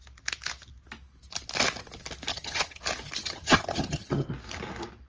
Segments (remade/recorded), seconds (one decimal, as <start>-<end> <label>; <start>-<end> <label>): 0.0-2.3 recorded; 2.3-2.8 remade; 2.8-3.2 recorded; 3.2-4.3 remade; 4.3-5.1 recorded